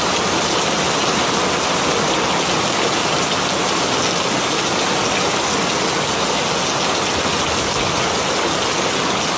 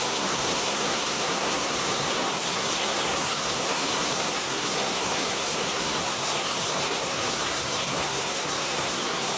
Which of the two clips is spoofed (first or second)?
second